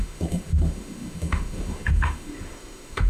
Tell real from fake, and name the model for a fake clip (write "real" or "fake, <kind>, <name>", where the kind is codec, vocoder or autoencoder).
fake, autoencoder, DAC-VAE